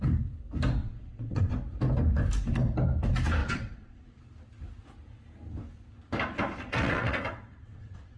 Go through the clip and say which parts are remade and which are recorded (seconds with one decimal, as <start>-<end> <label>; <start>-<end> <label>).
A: 0.0-0.8 recorded; 0.8-1.5 remade; 1.5-3.4 recorded; 3.4-4.2 remade; 4.2-6.7 recorded; 6.7-8.2 remade